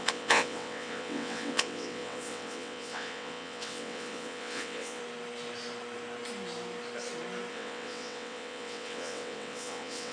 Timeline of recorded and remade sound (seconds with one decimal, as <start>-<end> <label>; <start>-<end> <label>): 0.0-5.0 remade; 5.0-7.5 recorded; 7.5-10.1 remade